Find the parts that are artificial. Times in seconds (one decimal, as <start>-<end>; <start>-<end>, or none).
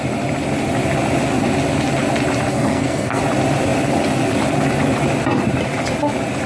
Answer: 2.5-3.2